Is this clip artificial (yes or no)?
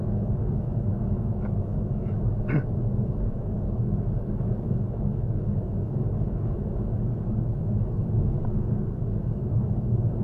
yes